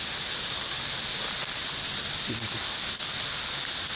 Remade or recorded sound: recorded